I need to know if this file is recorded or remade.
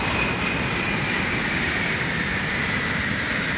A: recorded